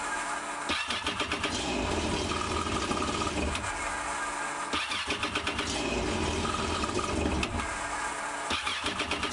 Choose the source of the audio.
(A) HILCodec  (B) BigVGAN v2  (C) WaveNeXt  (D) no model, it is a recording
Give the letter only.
D